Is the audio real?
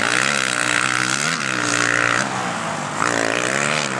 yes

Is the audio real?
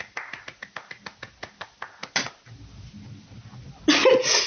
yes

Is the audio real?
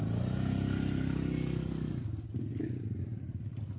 yes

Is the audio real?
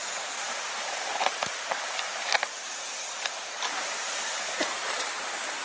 no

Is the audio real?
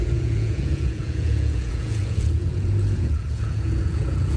no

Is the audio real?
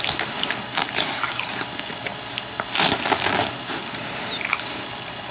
yes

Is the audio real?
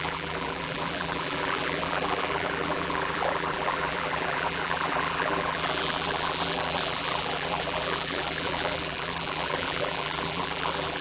no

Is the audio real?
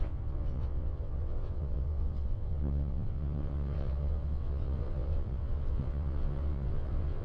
no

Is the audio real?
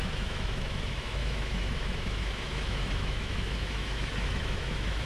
no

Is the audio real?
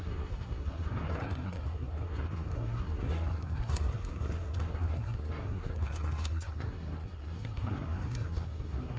no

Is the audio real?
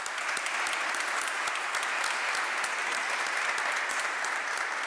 yes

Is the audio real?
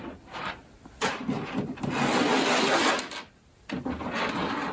yes